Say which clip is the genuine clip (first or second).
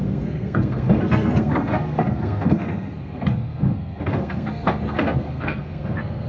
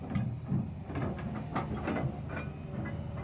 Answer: second